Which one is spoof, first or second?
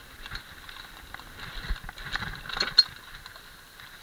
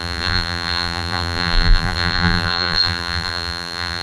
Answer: second